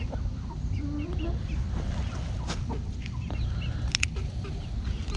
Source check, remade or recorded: recorded